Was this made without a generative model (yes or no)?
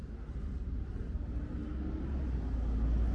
yes